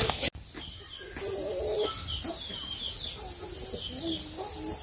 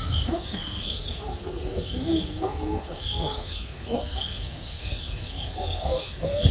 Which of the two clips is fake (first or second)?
second